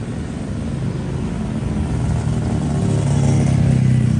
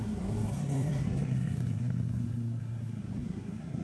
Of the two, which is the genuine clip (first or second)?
first